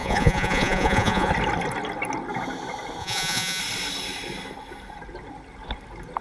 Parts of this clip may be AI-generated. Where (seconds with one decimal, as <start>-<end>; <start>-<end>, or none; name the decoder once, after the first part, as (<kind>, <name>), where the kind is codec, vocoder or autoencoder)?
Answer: 0.0-1.3 (vocoder, Vocos); 3.0-3.6